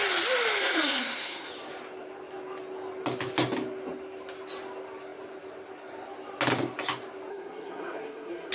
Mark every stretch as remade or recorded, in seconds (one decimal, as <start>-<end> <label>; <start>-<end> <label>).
0.0-0.6 recorded; 0.6-1.5 remade; 1.5-7.3 recorded; 7.3-8.5 remade